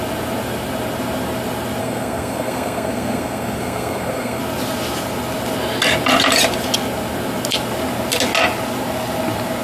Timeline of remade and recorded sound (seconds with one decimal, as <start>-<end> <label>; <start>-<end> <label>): 0.0-1.8 recorded; 1.8-4.4 remade; 4.4-9.6 recorded